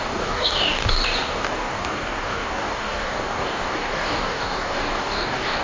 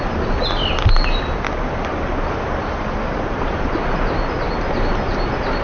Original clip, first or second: second